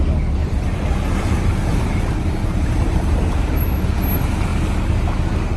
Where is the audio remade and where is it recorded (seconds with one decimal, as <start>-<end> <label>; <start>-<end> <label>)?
0.0-0.4 recorded; 0.4-3.8 remade; 3.8-5.6 recorded